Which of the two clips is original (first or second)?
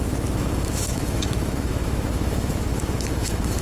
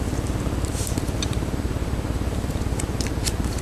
second